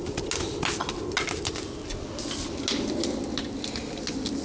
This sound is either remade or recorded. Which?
recorded